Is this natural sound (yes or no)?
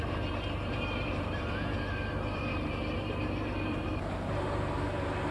no